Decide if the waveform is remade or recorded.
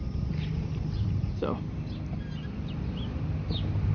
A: recorded